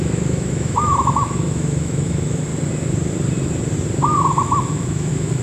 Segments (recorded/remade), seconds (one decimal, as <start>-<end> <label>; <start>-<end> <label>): 0.0-2.5 remade; 2.5-4.3 recorded; 4.3-5.4 remade